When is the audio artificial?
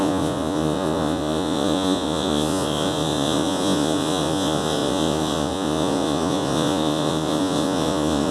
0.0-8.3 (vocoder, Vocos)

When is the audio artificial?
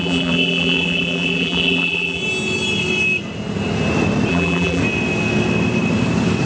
0.0-2.2 (vocoder, BigVGAN v2); 4.3-4.8